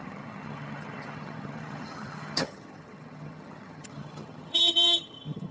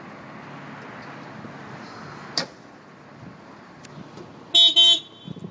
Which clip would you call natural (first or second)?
second